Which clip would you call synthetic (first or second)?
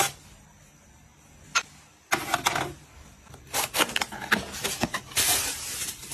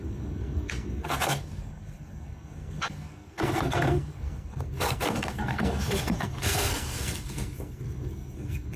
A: second